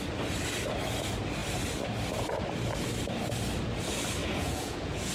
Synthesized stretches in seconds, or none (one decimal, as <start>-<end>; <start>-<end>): 4.2-5.1